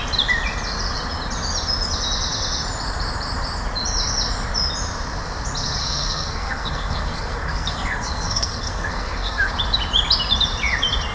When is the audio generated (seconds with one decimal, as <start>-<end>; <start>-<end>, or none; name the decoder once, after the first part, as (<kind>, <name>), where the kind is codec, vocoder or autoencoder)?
5.8-9.5 (codec, SNAC)